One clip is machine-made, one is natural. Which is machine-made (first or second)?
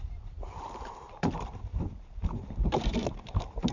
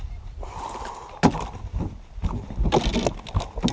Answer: first